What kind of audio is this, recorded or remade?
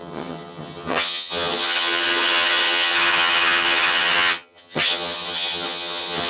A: remade